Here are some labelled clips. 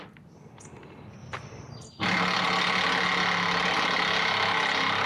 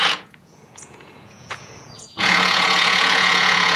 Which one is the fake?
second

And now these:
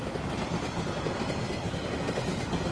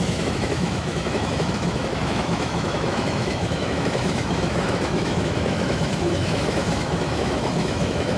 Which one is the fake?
second